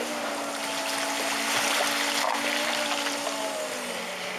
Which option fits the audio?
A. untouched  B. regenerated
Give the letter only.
A